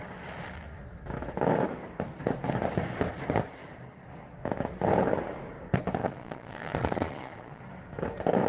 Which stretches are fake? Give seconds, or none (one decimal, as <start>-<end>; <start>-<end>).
6.0-7.6